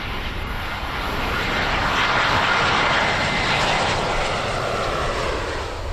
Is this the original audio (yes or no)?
yes